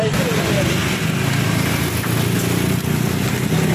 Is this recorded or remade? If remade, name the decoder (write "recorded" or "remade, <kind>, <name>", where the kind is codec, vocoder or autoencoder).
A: recorded